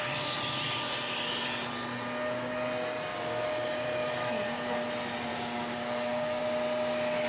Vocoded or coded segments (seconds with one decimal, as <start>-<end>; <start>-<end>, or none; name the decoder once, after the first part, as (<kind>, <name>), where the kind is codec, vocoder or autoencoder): 5.3-6.4 (codec, DAC)